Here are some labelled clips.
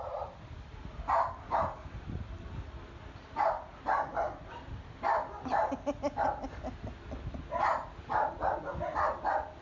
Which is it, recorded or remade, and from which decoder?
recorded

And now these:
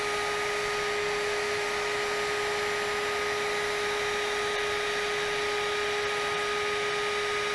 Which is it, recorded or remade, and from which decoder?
recorded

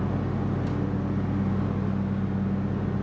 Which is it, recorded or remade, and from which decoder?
recorded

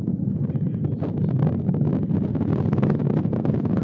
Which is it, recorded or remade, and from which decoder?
recorded